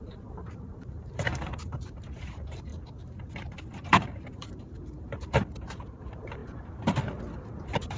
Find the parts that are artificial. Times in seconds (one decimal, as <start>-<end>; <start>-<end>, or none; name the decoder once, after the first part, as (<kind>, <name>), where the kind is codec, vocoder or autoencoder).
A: 0.0-2.7 (vocoder, BigVGAN v2); 3.8-5.4; 6.0-6.4; 7.5-8.0